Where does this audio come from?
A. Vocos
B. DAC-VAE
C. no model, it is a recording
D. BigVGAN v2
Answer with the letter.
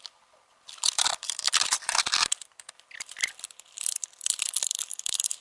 D